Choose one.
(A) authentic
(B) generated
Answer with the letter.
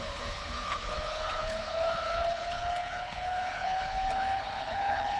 B